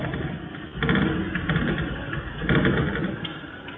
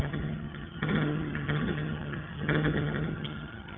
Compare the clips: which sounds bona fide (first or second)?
first